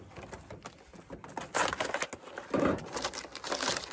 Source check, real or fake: real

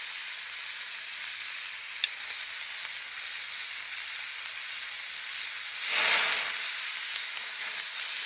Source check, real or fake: real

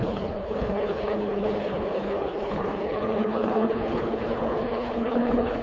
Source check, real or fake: fake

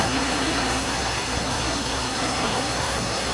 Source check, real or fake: fake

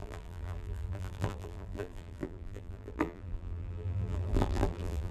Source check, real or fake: fake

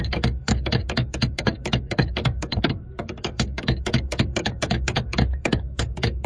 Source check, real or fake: fake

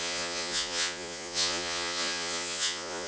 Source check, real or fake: fake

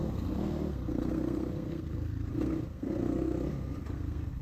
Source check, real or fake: fake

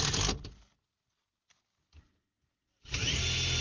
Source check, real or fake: real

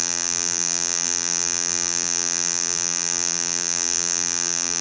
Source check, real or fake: fake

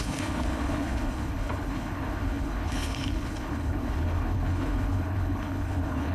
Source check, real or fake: fake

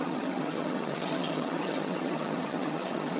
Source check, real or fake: fake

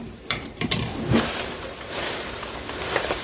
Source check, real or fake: fake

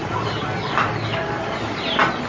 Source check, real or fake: real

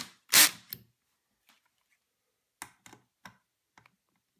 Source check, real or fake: real